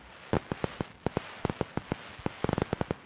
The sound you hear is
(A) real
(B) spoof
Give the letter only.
A